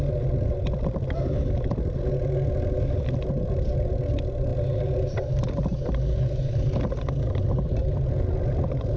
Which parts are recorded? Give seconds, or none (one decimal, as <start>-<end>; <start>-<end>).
0.0-9.0